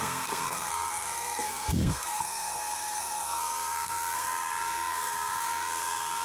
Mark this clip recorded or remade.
remade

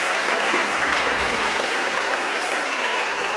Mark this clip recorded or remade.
remade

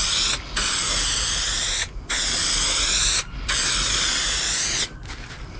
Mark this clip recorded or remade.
recorded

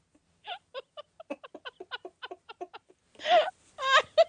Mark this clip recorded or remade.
recorded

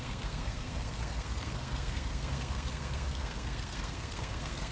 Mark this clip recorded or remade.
remade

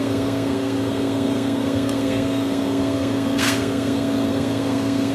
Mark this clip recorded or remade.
remade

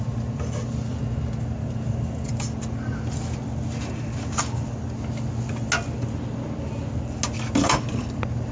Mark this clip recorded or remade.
recorded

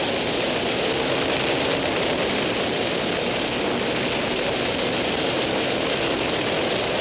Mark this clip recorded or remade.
recorded